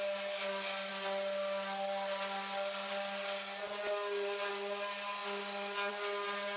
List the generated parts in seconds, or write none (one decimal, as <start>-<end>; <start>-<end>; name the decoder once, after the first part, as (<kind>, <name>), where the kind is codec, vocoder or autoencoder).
none